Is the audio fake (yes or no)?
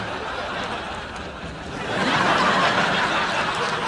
no